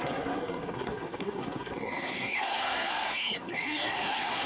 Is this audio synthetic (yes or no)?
yes